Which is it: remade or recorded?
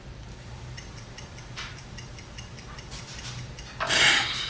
recorded